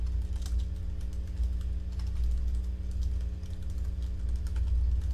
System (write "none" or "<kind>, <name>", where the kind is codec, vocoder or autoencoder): none